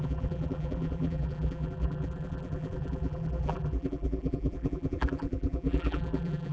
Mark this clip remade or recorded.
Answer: remade